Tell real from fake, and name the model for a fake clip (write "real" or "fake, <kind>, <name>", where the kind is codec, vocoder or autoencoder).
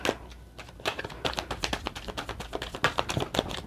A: real